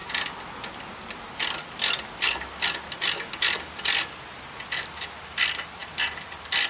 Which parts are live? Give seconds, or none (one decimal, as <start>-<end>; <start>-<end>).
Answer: 0.0-6.7